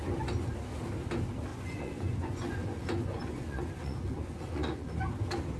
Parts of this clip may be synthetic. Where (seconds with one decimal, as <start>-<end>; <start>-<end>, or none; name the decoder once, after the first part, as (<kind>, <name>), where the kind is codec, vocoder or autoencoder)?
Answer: 1.5-4.9 (vocoder, Vocos)

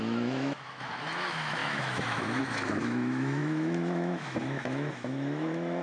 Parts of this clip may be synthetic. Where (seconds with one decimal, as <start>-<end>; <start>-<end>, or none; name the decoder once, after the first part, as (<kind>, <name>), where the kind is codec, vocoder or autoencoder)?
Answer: 0.0-5.8 (autoencoder, DAC-VAE)

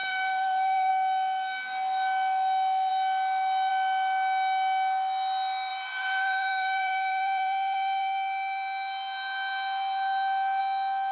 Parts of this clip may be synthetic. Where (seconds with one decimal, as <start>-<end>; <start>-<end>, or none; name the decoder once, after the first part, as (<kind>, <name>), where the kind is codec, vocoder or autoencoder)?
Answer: 0.0-0.9 (vocoder, BigVGAN v2); 5.7-10.6